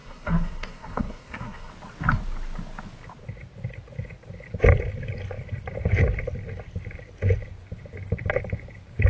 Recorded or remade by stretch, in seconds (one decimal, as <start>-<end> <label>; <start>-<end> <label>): 0.0-1.7 remade; 1.7-9.1 recorded